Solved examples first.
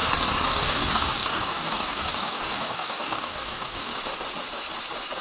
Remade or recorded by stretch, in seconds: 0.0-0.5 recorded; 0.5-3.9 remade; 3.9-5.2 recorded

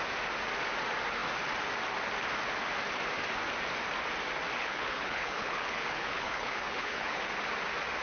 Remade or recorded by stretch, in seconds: 0.0-4.6 recorded; 4.6-7.2 remade; 7.2-8.0 recorded